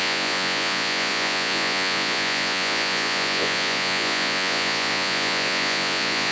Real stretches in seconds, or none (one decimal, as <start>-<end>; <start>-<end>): none